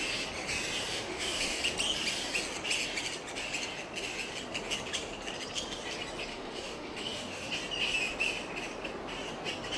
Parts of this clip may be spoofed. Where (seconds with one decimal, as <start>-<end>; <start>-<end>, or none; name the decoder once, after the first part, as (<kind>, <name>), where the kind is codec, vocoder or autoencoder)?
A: 0.9-1.6 (autoencoder, DAC-VAE); 6.3-7.5